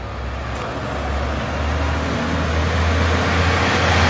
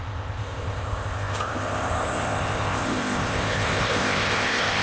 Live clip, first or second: first